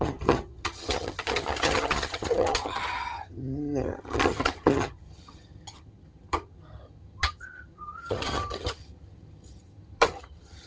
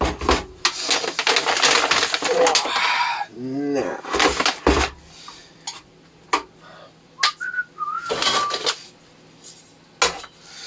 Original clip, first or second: second